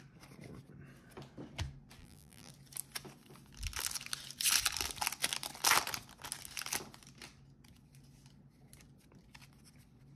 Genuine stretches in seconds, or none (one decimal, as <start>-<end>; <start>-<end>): 0.0-2.0; 2.5-10.2